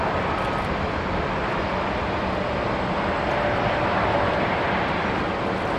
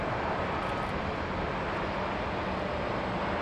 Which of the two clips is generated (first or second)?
first